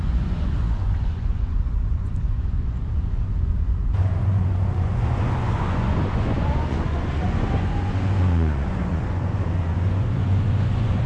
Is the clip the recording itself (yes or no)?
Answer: no